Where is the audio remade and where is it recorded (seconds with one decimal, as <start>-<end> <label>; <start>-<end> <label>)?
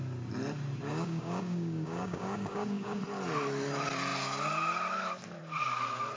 0.0-0.9 recorded; 0.9-3.0 remade; 3.0-6.2 recorded